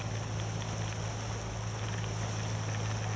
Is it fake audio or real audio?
real